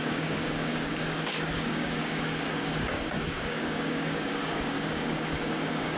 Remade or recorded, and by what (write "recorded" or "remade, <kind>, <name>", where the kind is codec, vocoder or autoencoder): remade, codec, DAC